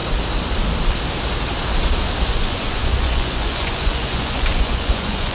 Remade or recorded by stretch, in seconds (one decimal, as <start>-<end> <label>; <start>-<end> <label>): 0.0-2.3 recorded; 2.3-5.3 remade